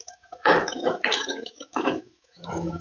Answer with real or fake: fake